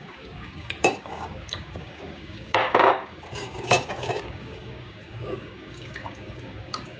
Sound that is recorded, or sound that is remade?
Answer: remade